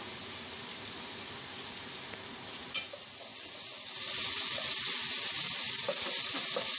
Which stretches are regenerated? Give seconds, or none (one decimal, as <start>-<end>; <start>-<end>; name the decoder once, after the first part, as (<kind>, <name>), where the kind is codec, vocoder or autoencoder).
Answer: none